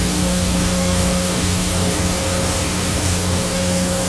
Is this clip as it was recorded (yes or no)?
no